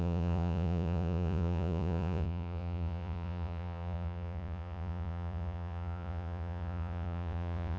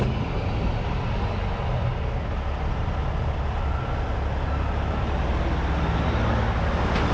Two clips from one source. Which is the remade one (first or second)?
first